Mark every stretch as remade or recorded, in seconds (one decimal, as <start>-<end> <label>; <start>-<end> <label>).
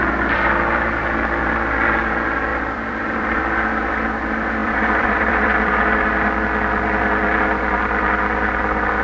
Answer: 0.0-2.5 recorded; 2.5-3.4 remade; 3.4-4.6 recorded; 4.6-5.8 remade; 5.8-9.0 recorded